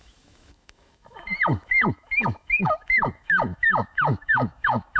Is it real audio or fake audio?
fake